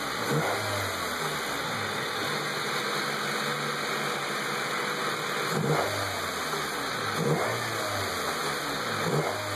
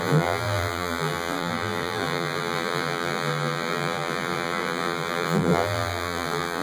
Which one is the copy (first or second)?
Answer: second